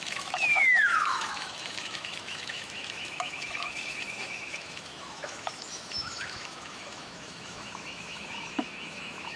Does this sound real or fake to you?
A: fake